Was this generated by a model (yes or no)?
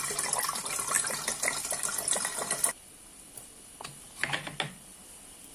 no